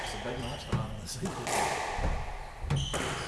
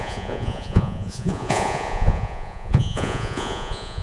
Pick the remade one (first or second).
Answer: second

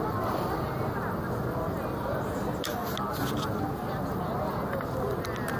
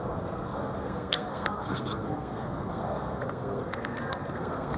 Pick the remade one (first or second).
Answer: second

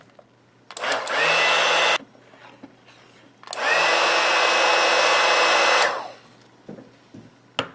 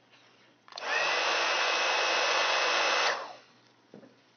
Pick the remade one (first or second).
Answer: second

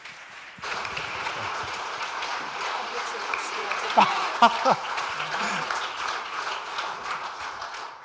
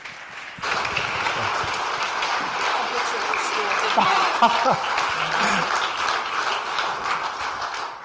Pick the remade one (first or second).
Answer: first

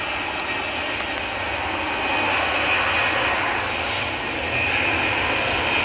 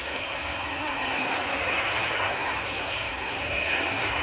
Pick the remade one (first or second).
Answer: second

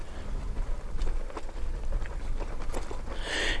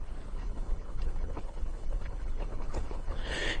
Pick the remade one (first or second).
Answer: second